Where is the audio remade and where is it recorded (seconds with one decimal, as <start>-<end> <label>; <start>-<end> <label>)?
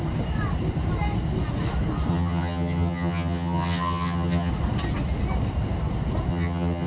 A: 0.0-2.1 recorded; 2.1-4.5 remade; 4.5-6.3 recorded; 6.3-6.9 remade